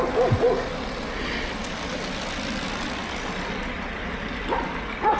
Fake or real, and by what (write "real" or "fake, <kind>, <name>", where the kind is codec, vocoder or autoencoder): real